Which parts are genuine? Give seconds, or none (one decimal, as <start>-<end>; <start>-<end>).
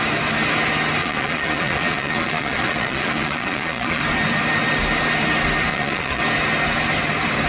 0.0-1.0; 4.0-5.7; 6.2-7.5